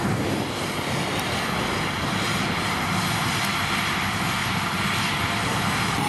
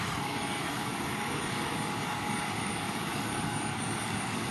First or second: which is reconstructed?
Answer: second